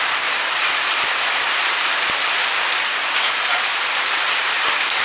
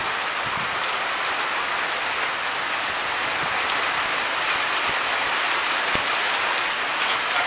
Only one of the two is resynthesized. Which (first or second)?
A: first